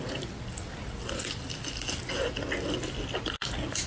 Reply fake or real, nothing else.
real